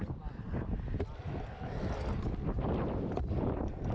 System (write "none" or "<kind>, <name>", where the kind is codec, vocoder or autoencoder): none